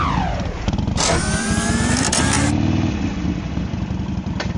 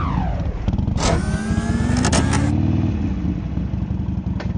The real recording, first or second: second